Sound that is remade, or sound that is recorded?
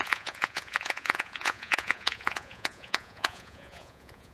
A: remade